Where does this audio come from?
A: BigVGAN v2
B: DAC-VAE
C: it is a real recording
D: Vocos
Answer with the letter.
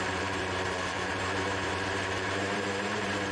A